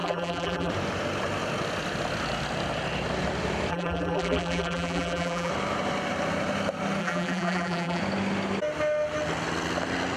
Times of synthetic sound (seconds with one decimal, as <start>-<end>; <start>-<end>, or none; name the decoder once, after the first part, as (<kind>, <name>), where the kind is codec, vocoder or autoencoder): 0.0-0.7 (vocoder, BigVGAN v2); 3.7-5.5; 7.0-8.0